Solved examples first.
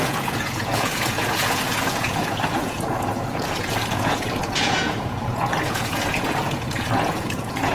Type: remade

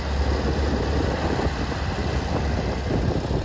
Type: recorded